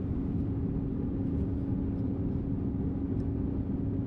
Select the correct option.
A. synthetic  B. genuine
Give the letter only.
B